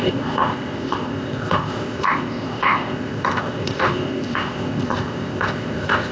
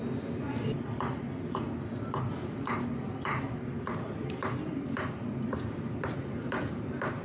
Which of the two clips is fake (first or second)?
first